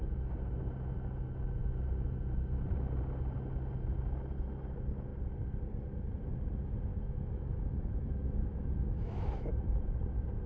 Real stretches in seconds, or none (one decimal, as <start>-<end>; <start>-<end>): 0.0-6.9; 9.5-10.5